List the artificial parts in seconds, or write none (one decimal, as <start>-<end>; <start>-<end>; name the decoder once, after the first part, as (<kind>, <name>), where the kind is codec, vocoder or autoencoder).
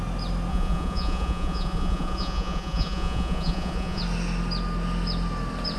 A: 0.5-4.0 (vocoder, Vocos)